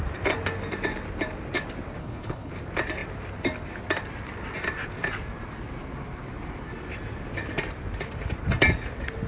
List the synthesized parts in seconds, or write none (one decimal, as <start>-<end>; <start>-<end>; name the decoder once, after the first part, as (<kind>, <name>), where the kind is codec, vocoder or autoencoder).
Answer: 2.0-2.5 (codec, HILCodec)